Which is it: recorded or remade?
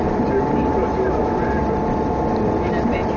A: recorded